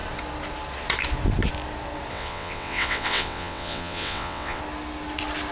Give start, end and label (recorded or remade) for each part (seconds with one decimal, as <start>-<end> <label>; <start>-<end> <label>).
0.0-2.1 recorded; 2.1-4.6 remade; 4.6-5.5 recorded